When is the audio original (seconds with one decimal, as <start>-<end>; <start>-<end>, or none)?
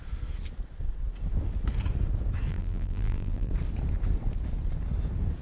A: 0.0-2.5; 3.5-5.4